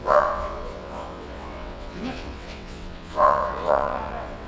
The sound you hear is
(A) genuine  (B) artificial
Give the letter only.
B